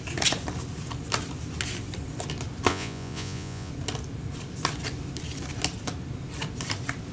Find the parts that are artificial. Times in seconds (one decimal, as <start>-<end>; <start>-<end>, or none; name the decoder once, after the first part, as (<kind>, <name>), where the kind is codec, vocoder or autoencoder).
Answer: 2.7-3.7 (vocoder, Vocos)